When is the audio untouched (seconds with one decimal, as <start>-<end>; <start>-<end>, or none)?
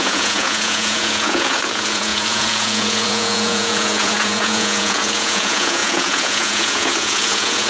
none